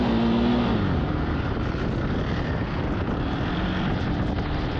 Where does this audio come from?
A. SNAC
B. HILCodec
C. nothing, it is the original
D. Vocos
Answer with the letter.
C